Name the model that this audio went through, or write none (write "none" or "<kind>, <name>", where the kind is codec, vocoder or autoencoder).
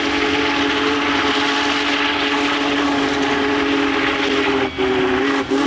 none